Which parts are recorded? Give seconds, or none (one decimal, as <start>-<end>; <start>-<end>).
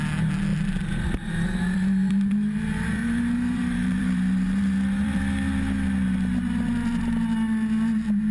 0.0-0.5; 5.2-8.3